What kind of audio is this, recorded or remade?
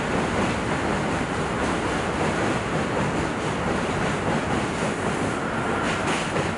recorded